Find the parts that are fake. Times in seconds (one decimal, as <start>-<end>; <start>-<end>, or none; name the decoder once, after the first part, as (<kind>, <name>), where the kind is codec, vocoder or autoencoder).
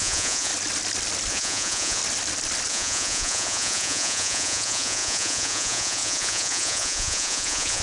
0.0-0.5 (vocoder, Vocos); 1.3-2.0; 2.7-7.8